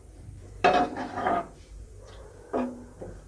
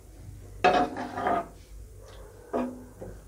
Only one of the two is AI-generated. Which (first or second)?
first